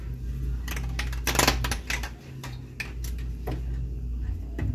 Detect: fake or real real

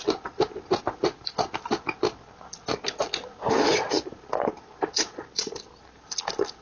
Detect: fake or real real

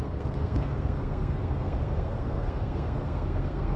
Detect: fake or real fake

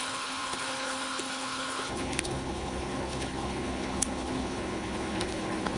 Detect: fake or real fake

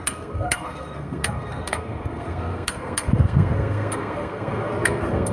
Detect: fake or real fake